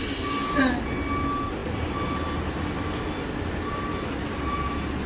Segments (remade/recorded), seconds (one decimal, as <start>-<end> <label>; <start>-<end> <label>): 0.0-5.1 recorded